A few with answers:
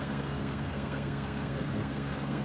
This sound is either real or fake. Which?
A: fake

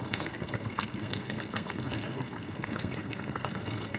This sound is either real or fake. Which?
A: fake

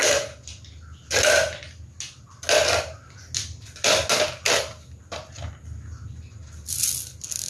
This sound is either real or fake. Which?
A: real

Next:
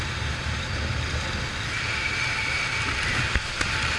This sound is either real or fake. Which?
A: real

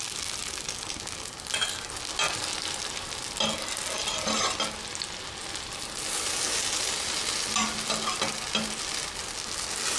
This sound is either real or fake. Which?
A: real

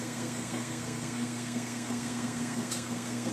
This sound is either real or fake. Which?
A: fake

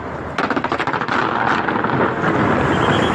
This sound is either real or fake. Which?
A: real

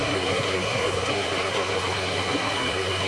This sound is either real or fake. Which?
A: fake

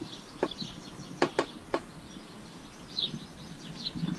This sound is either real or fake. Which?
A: real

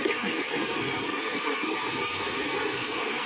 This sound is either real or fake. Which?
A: fake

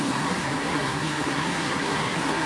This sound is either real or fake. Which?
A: fake